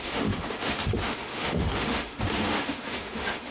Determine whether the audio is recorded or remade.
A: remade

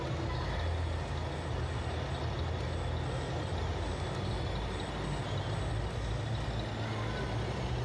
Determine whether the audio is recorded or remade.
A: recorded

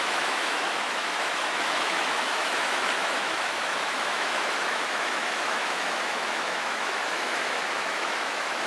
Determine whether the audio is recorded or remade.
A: remade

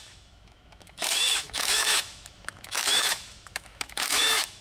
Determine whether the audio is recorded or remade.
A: remade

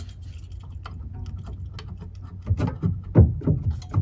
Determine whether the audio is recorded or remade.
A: recorded